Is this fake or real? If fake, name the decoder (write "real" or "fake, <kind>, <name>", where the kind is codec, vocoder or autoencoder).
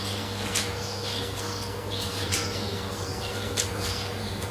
fake, codec, SNAC